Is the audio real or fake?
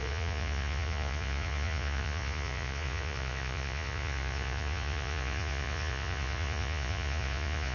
fake